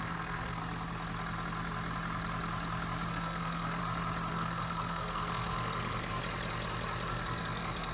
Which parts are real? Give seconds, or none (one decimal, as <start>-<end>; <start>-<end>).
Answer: 0.6-3.1; 3.8-4.3; 6.2-7.1